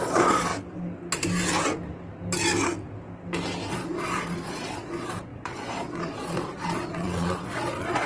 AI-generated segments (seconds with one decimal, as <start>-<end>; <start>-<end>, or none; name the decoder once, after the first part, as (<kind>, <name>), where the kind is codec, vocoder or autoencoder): 0.0-0.5 (vocoder, Vocos); 3.7-8.1